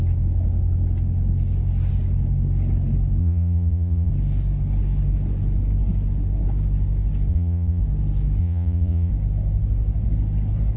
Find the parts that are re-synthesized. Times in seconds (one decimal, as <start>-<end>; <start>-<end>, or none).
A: 3.2-4.1; 7.3-7.8; 8.4-9.1